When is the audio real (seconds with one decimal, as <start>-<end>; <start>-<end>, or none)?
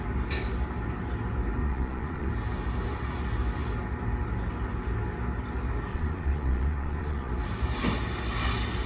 0.0-1.6; 2.3-5.9; 7.3-8.9